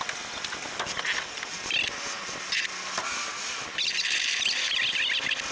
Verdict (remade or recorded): recorded